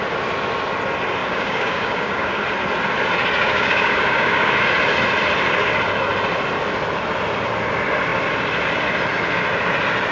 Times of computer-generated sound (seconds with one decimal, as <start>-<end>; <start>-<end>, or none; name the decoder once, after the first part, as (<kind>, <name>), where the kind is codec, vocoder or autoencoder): 1.2-2.4 (codec, DAC); 3.4-4.5